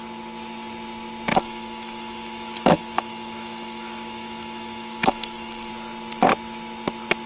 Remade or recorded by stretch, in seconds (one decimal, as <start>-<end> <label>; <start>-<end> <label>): 0.0-1.3 recorded; 1.3-5.7 remade; 5.7-7.3 recorded